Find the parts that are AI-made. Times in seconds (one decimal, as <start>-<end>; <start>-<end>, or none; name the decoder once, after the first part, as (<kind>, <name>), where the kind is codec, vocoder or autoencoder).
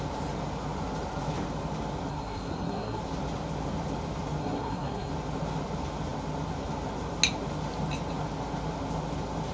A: 2.1-3.0 (codec, SNAC); 4.4-5.1